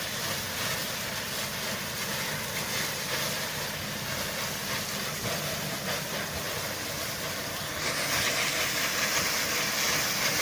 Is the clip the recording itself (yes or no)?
yes